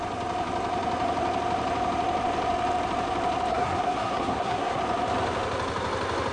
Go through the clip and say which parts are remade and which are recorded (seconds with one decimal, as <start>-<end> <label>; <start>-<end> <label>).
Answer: 0.0-3.5 recorded; 3.5-4.8 remade; 4.8-6.3 recorded